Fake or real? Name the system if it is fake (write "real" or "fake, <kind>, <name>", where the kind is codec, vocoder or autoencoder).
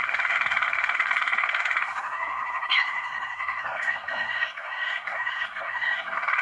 fake, codec, SNAC